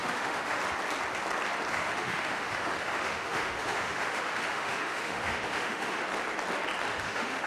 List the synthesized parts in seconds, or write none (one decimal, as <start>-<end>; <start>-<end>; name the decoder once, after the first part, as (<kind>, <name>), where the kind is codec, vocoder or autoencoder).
0.0-0.6 (autoencoder, DAC-VAE); 1.7-6.0; 6.9-7.5